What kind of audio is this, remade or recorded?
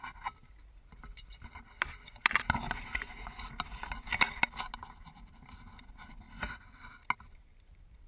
recorded